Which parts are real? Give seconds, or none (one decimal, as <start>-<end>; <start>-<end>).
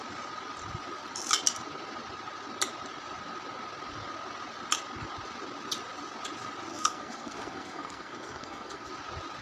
0.0-6.7; 8.9-9.4